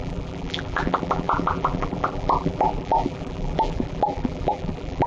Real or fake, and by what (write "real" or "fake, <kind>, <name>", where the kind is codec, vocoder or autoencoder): fake, vocoder, BigVGAN v2